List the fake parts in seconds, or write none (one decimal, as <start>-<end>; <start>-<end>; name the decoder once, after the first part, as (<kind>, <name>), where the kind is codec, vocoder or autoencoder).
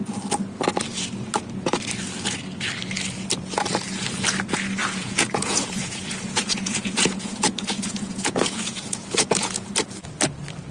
4.8-9.7 (vocoder, Vocos)